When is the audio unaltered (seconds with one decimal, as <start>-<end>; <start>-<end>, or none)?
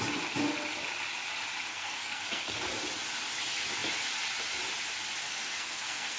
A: 0.0-1.7; 2.6-5.2